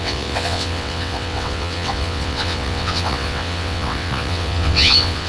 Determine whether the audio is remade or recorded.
remade